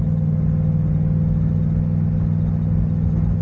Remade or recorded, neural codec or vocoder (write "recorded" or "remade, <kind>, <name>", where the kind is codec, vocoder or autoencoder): recorded